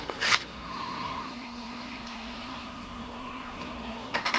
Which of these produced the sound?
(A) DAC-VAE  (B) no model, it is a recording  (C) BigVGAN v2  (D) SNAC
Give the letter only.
D